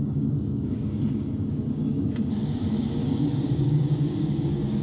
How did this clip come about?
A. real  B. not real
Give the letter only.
B